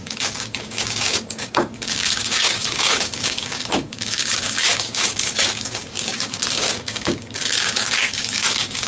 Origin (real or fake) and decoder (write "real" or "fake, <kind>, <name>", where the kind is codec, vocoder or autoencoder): fake, codec, DAC